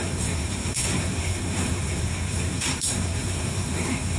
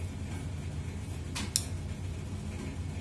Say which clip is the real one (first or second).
second